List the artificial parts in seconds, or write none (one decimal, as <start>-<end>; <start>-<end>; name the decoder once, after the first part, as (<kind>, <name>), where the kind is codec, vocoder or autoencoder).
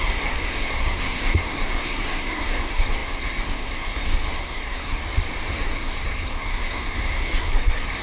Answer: 0.0-5.0 (codec, SNAC); 5.5-8.0